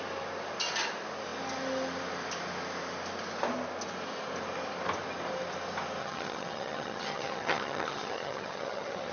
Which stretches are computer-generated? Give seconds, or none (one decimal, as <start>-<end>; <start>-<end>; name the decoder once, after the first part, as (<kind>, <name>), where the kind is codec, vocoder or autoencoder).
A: 6.0-9.1 (vocoder, HiFi-GAN)